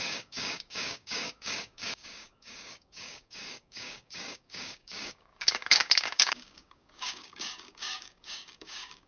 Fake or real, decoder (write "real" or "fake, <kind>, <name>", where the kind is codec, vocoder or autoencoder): fake, codec, DAC